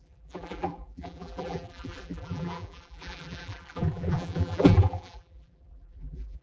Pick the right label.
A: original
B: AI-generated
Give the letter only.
B